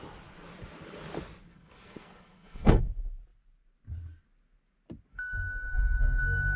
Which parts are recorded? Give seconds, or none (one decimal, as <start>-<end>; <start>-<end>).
0.0-1.5; 2.8-5.1